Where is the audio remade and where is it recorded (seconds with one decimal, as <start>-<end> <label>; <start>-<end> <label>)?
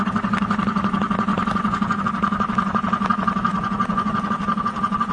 0.0-1.3 recorded; 1.3-2.0 remade; 2.0-3.5 recorded; 3.5-4.3 remade; 4.3-5.1 recorded